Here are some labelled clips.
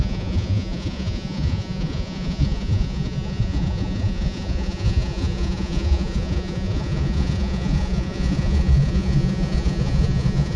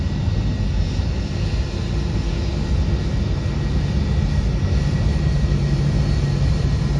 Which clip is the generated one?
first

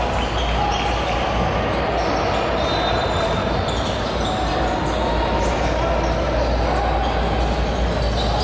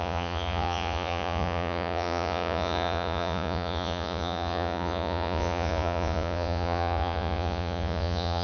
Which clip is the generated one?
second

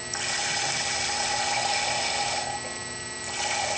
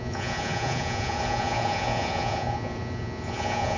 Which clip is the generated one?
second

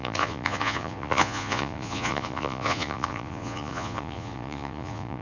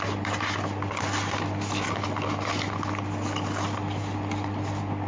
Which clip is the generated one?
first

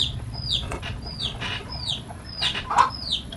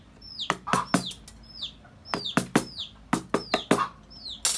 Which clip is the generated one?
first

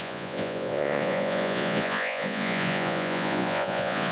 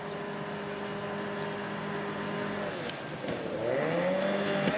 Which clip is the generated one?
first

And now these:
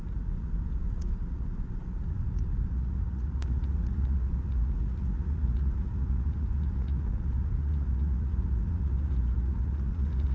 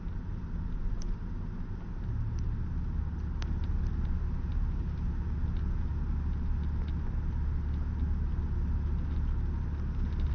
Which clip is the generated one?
first